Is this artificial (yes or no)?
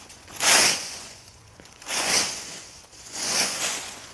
yes